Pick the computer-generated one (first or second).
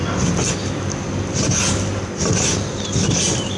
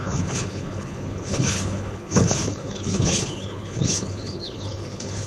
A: second